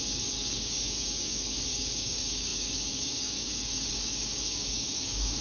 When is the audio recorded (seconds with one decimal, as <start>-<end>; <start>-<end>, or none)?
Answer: none